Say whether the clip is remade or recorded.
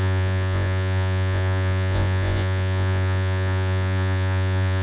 remade